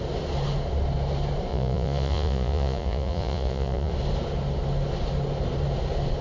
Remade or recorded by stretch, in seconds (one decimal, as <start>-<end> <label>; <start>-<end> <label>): 0.0-1.5 recorded; 1.5-3.9 remade; 3.9-6.2 recorded